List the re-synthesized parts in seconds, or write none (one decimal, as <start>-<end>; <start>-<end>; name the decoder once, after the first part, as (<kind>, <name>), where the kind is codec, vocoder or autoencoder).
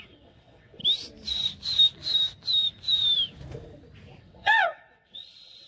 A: 0.0-0.8 (vocoder, WaveNeXt); 4.2-5.7